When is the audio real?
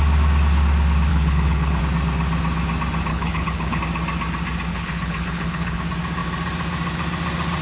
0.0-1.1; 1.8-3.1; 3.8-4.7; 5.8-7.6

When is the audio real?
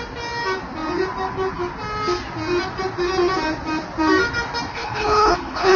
0.0-4.7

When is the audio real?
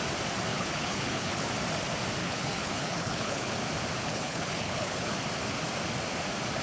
0.0-0.5; 1.5-2.2; 3.5-4.0; 5.1-6.6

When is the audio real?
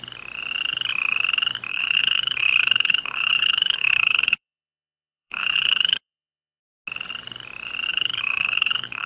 0.0-1.7; 6.6-7.9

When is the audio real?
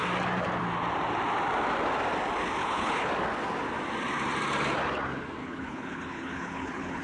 0.0-2.6; 3.1-5.4